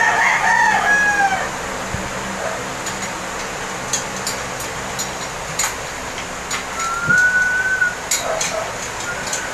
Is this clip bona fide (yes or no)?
yes